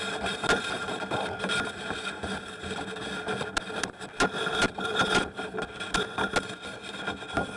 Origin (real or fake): real